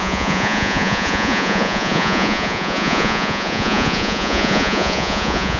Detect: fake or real fake